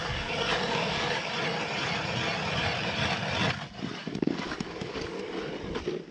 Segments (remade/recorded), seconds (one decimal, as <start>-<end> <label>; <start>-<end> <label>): 0.0-1.3 remade; 1.3-4.0 recorded; 4.0-5.2 remade; 5.2-6.1 recorded